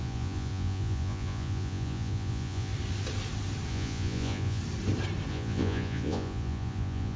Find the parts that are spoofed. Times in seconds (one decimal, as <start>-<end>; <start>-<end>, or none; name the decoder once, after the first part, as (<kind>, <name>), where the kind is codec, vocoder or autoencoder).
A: 0.0-2.7 (vocoder, Vocos); 3.7-4.6; 5.3-7.2